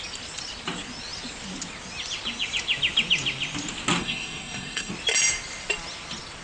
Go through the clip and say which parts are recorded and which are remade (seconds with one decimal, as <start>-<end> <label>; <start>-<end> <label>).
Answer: 0.0-4.0 recorded; 4.0-4.9 remade; 4.9-6.4 recorded